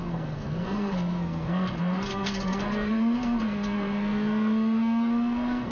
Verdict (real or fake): fake